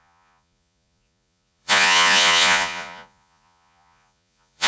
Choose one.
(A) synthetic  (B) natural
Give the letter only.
A